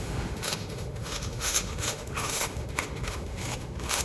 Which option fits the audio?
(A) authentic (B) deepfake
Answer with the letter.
B